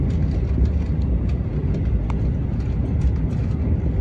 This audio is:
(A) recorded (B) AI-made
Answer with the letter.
A